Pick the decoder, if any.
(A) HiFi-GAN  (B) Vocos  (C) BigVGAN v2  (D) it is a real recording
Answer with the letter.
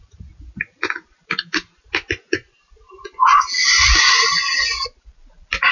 D